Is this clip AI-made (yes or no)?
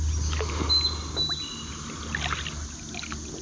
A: no